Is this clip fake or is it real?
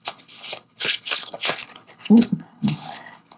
fake